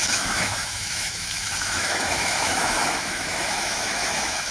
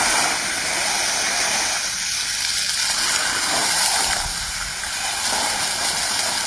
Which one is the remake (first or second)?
first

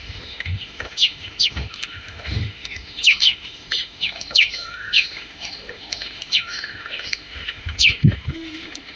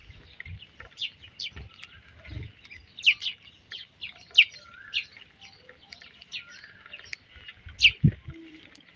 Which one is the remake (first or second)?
first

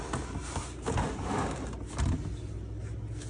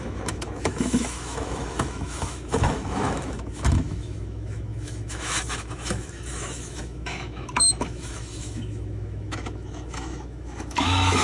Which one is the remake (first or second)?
second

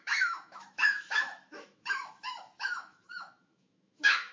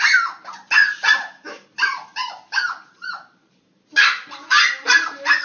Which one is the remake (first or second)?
first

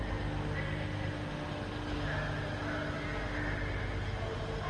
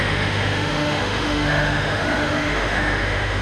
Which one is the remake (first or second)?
second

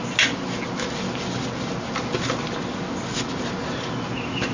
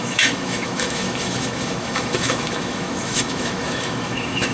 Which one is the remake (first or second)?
second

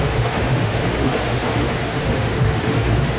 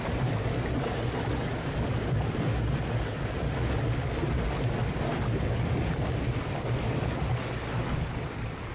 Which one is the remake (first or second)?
first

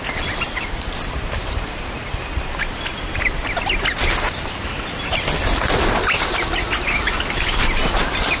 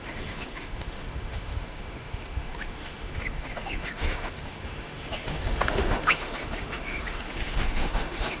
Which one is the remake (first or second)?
second